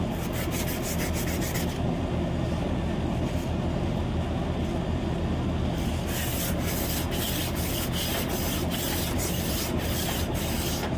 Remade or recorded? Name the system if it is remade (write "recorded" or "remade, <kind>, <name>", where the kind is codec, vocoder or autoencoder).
recorded